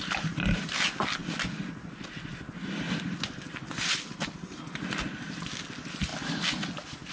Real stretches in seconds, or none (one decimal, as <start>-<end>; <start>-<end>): 0.0-7.1